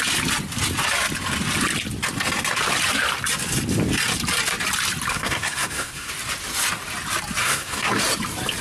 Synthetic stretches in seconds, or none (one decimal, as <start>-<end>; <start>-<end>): 5.1-6.1; 7.4-7.9